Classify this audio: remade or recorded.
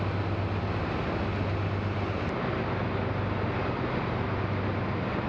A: recorded